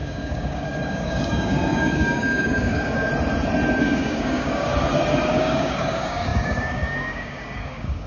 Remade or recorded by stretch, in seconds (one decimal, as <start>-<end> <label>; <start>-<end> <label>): 0.0-3.1 remade; 3.1-3.8 recorded; 3.8-4.7 remade; 4.7-5.3 recorded; 5.3-8.1 remade